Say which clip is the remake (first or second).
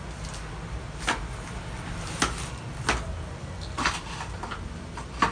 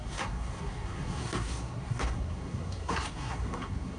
second